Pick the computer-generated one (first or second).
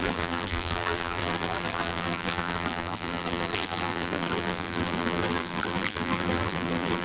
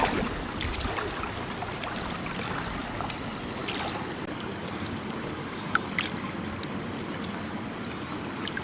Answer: first